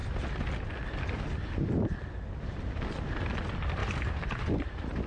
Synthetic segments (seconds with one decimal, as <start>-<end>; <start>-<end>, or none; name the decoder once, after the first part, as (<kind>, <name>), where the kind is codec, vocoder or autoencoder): none